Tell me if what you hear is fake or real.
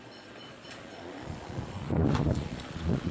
fake